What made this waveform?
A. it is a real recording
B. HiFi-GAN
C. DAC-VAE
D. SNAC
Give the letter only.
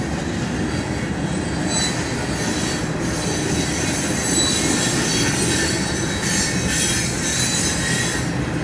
A